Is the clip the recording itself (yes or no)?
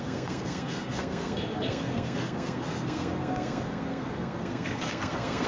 no